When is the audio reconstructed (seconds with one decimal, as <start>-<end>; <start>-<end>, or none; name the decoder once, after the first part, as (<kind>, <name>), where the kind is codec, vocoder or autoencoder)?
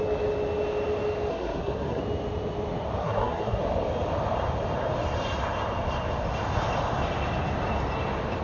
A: 1.3-2.0 (codec, SNAC); 3.0-3.6